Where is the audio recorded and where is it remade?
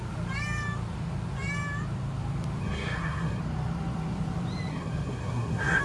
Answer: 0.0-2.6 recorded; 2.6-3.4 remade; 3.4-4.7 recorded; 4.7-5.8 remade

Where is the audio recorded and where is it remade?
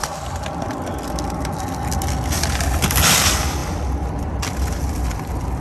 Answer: 0.0-5.6 recorded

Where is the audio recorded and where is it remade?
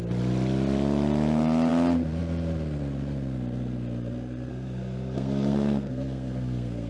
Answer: 0.0-4.5 recorded; 4.5-6.9 remade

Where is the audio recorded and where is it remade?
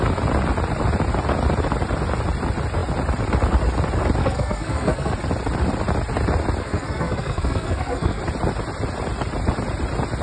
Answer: 0.0-4.2 recorded; 4.2-5.1 remade; 5.1-6.6 recorded; 6.6-8.2 remade; 8.2-10.2 recorded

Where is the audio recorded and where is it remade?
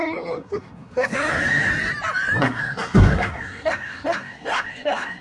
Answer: 0.0-1.7 remade; 1.7-2.4 recorded; 2.4-5.2 remade